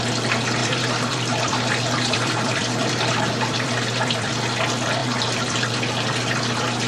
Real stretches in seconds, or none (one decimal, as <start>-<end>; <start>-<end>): 0.0-0.6; 4.3-5.0; 5.8-6.9